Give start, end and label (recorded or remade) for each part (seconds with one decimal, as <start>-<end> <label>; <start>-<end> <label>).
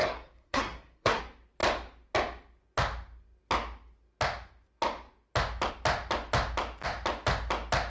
0.0-1.2 remade; 1.2-7.9 recorded